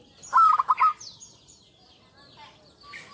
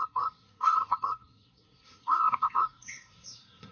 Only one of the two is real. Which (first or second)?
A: first